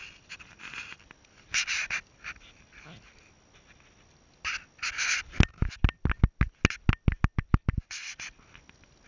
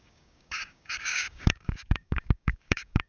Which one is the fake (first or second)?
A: second